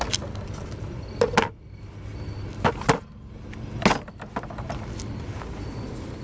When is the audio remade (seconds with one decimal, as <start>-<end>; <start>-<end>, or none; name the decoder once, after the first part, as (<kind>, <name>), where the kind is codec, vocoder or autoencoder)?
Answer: none